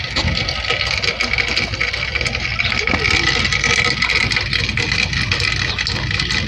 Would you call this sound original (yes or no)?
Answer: yes